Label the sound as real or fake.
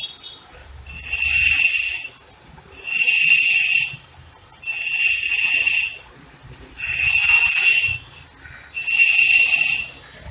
real